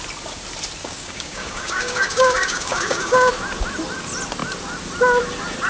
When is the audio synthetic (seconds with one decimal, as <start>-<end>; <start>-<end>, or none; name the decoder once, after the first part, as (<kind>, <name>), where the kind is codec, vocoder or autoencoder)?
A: 0.8-3.3 (codec, DAC)